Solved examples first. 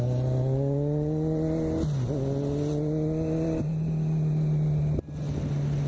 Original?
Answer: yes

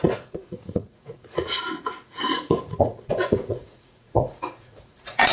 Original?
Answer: no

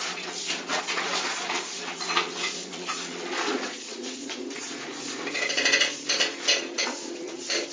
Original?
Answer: no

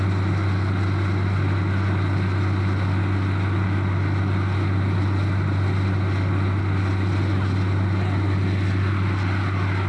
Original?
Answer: yes